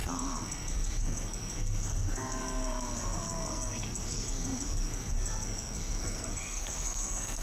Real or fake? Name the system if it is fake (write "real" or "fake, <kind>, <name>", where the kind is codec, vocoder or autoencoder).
fake, codec, SNAC